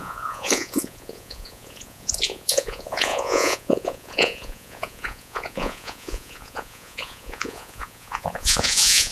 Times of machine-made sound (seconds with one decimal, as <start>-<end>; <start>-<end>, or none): 0.0-9.1